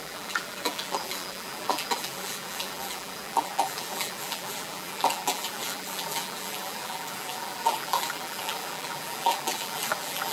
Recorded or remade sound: remade